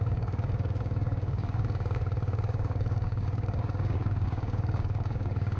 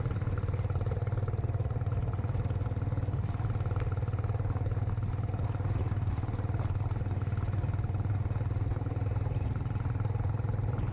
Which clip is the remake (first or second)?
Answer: first